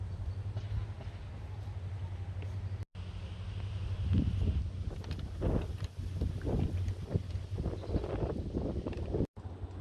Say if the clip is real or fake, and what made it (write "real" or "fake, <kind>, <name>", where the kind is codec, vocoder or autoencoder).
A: real